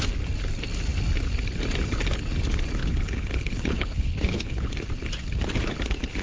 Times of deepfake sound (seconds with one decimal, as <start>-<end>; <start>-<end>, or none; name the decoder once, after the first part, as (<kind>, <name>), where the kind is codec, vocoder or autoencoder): 2.8-4.7 (codec, HILCodec)